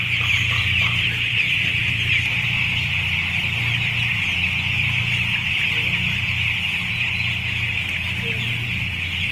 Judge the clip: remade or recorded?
recorded